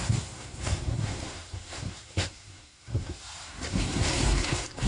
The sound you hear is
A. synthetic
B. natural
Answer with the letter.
A